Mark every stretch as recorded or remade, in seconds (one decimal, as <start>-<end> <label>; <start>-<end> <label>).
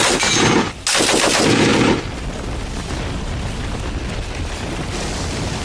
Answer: 0.0-5.6 recorded